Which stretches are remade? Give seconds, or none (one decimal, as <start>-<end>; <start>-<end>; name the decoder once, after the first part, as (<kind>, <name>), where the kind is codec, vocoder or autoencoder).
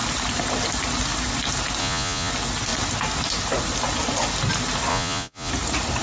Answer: 1.8-2.3 (vocoder, Vocos); 4.9-5.5